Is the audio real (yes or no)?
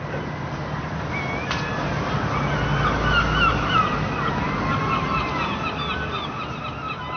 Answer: yes